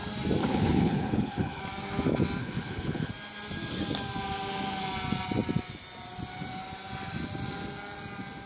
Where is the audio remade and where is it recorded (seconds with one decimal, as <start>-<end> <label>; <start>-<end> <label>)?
0.0-0.4 recorded; 0.4-1.6 remade; 1.6-2.4 recorded; 2.4-3.1 remade; 3.1-8.5 recorded